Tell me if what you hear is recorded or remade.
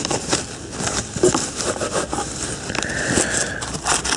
recorded